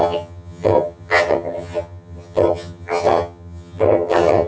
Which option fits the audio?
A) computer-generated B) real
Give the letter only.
A